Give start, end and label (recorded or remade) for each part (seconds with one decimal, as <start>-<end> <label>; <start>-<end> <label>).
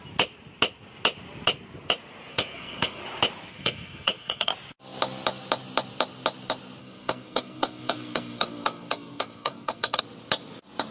0.0-2.3 recorded; 2.3-3.0 remade; 3.0-3.5 recorded; 3.5-4.5 remade; 4.5-6.8 recorded; 6.8-10.0 remade; 10.0-10.9 recorded